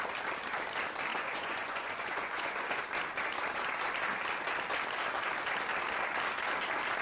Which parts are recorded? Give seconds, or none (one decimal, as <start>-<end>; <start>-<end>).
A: 0.0-1.1; 2.8-7.0